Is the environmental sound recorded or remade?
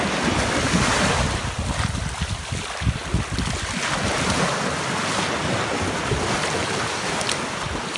recorded